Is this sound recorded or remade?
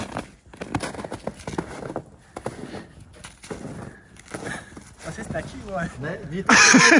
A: recorded